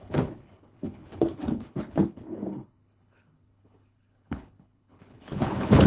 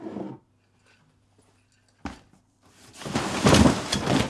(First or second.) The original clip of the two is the second